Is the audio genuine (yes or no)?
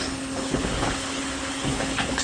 no